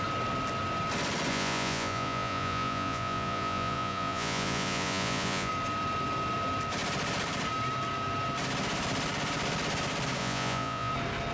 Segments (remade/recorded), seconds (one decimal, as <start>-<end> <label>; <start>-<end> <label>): 0.0-1.3 recorded; 1.3-5.5 remade; 5.5-10.2 recorded; 10.2-10.9 remade; 10.9-11.3 recorded